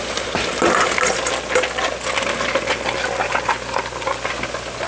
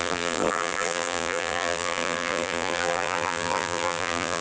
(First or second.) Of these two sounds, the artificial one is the second